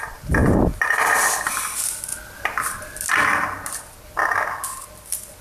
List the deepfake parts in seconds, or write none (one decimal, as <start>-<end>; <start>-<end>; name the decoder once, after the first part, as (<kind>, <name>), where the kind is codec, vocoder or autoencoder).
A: 0.4-1.4 (vocoder, BigVGAN v2)